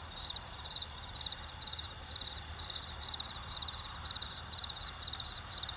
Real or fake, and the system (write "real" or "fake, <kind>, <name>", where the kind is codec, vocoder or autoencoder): fake, vocoder, BigVGAN v2